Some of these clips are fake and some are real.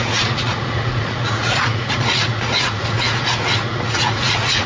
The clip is fake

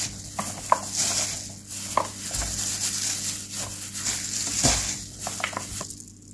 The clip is real